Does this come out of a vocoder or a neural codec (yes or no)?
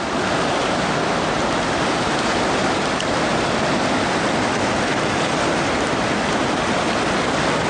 no